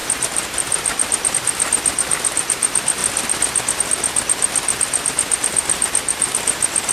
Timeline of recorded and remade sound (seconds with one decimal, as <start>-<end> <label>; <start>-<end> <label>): 0.0-6.9 remade